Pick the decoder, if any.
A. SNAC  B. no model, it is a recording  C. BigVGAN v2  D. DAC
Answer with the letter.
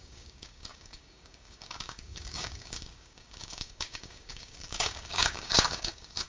D